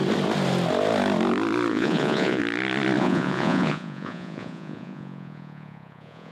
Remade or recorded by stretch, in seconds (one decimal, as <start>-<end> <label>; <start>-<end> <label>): 0.0-1.7 recorded; 1.7-2.4 remade; 2.4-3.0 recorded; 3.0-6.3 remade